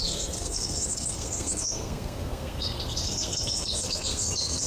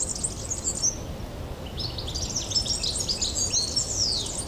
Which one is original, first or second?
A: second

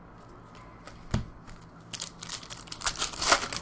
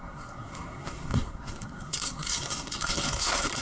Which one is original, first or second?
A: first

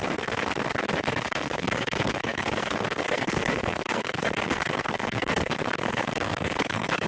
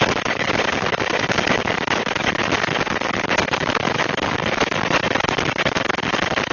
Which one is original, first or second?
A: second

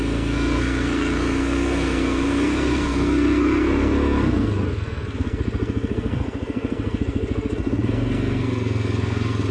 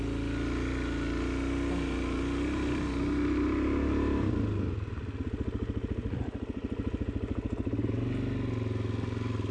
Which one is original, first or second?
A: second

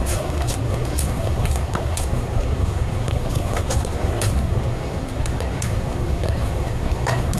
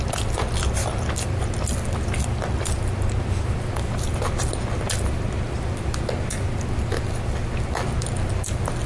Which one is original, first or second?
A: second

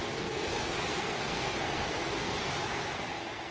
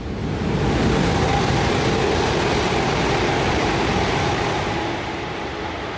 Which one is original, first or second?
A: second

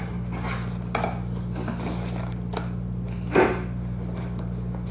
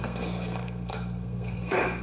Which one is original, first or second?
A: first